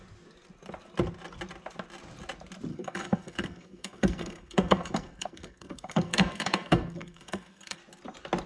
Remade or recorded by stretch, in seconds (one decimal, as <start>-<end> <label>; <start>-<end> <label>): 0.0-2.7 recorded; 2.7-7.8 remade; 7.8-8.5 recorded